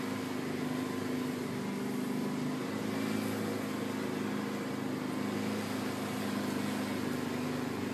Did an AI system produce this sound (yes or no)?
no